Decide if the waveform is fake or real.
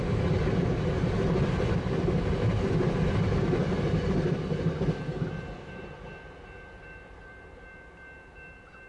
real